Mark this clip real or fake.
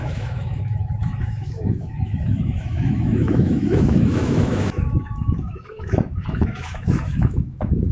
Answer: fake